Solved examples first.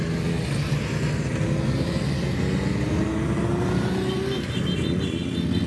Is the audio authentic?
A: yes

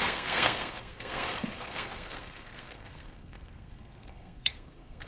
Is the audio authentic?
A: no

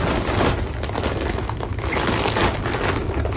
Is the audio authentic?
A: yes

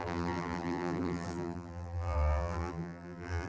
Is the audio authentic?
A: no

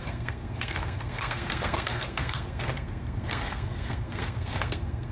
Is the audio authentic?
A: no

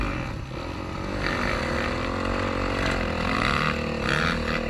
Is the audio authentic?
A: yes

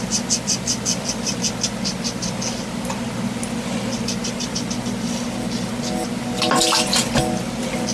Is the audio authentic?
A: yes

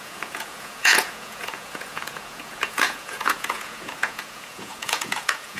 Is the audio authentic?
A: no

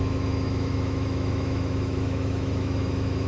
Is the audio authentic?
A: no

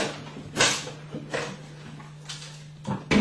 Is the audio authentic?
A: yes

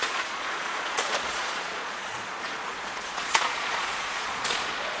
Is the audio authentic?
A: no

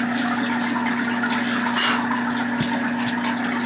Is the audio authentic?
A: yes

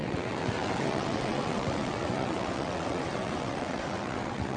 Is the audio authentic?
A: no